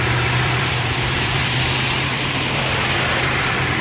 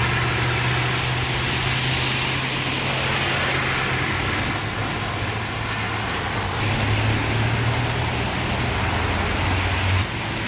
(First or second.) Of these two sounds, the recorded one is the second